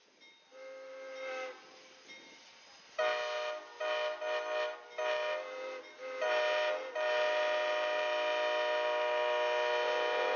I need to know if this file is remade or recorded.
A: recorded